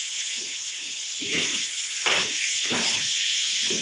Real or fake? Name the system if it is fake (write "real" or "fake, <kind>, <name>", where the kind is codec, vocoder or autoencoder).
fake, codec, HILCodec